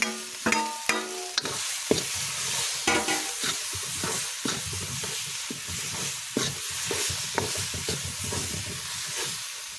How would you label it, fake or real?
real